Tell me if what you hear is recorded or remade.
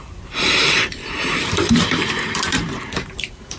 remade